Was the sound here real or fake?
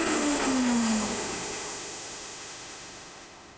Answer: fake